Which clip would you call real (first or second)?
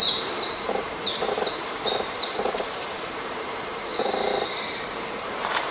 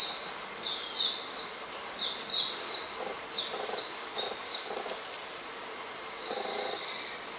second